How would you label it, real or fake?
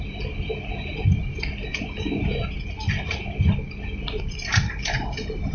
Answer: real